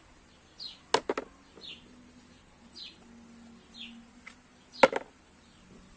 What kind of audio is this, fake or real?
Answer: real